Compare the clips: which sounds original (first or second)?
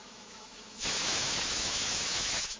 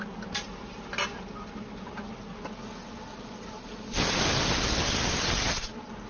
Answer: second